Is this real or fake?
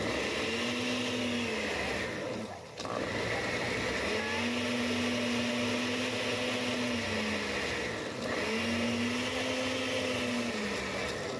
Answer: real